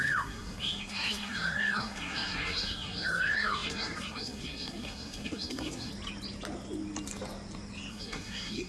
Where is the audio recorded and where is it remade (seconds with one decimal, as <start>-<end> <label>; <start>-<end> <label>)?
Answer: 0.0-5.9 remade; 5.9-7.9 recorded; 7.9-8.7 remade